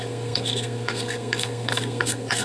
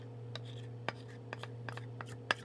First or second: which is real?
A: second